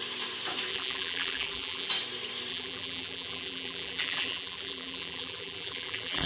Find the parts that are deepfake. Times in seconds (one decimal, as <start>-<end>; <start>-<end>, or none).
0.7-1.9; 2.5-6.3